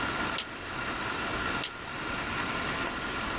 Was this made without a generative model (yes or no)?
yes